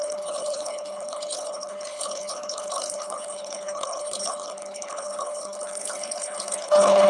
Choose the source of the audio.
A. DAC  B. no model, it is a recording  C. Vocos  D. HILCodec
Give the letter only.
D